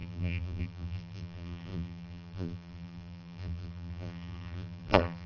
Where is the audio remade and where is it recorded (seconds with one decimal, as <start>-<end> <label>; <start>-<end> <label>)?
0.0-5.3 remade